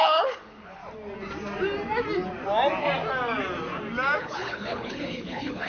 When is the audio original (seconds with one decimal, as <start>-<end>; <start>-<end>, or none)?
0.8-4.2